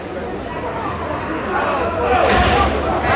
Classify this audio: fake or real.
real